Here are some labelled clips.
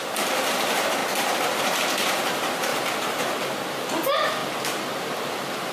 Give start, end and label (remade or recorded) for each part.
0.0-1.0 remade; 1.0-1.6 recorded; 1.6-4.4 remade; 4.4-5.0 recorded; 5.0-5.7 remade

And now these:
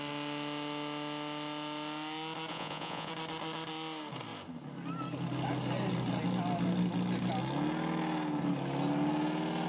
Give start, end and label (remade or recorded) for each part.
0.0-2.5 recorded; 2.5-3.1 remade; 3.1-9.7 recorded

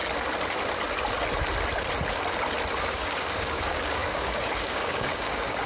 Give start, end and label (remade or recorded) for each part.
0.0-2.8 recorded; 2.8-5.7 remade